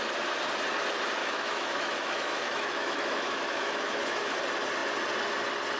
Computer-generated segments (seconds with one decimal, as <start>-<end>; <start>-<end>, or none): 1.2-4.3